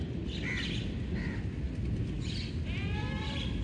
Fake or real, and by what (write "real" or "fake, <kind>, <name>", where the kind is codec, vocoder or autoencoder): real